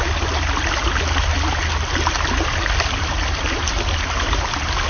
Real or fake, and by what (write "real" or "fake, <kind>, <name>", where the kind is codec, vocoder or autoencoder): real